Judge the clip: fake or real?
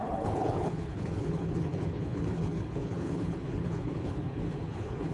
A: fake